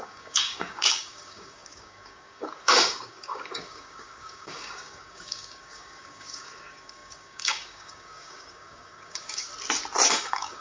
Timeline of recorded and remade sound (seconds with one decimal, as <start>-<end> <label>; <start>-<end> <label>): 0.0-9.5 remade; 9.5-10.1 recorded; 10.1-10.6 remade